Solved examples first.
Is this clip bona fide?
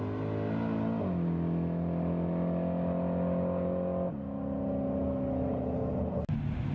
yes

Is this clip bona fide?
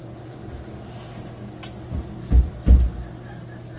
yes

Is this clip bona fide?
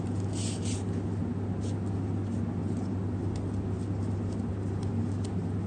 yes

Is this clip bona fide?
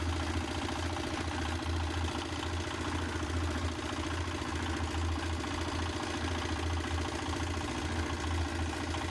yes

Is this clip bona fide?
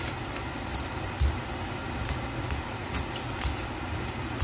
yes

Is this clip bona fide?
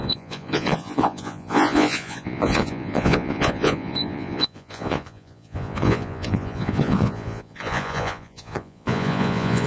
no